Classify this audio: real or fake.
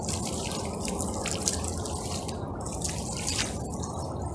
real